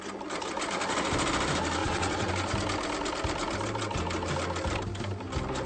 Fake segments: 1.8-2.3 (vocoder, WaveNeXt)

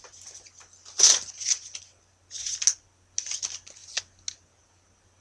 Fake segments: none